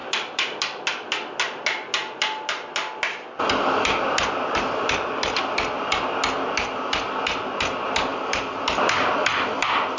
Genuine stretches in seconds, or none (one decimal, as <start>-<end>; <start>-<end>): 0.0-10.0